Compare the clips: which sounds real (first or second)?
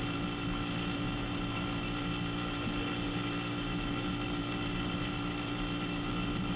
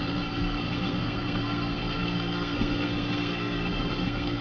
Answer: first